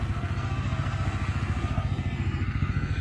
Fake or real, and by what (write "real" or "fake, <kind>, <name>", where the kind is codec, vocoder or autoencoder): fake, codec, SNAC